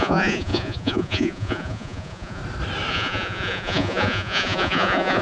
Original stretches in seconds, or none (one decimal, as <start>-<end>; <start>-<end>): 2.4-2.9